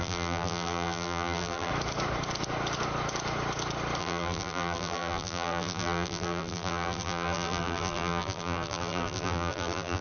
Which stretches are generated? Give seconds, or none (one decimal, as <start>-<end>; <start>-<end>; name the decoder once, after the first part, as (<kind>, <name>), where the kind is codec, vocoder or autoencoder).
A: 0.0-1.7 (vocoder, BigVGAN v2); 4.0-10.0